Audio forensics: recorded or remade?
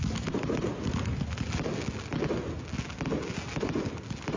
recorded